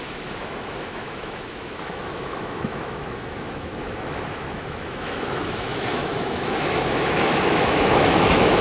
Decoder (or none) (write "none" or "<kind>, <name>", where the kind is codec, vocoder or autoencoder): autoencoder, DAC-VAE